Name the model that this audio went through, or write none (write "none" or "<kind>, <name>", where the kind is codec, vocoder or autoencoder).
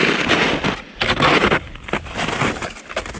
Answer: none